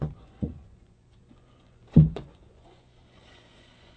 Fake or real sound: fake